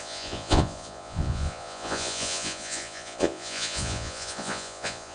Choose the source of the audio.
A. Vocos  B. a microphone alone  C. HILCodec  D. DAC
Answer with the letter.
A